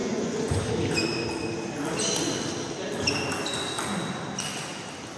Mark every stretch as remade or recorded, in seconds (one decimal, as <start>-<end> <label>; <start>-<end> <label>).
0.0-0.7 remade; 0.7-5.2 recorded

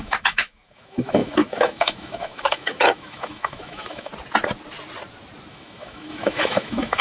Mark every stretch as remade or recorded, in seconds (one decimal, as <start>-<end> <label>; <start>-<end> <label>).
0.0-4.1 remade; 4.1-5.5 recorded; 5.5-7.0 remade

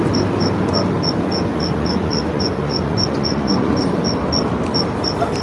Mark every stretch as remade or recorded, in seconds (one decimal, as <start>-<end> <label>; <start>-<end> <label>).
0.0-1.5 recorded; 1.5-3.8 remade; 3.8-5.4 recorded

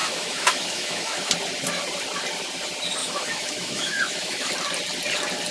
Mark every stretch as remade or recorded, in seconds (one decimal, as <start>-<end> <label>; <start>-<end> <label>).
0.0-1.3 remade; 1.3-3.0 recorded; 3.0-4.5 remade; 4.5-5.5 recorded

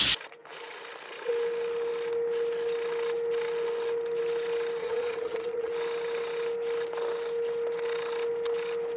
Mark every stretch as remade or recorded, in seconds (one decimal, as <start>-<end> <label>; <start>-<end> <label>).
0.0-4.8 recorded; 4.8-5.7 remade; 5.7-9.0 recorded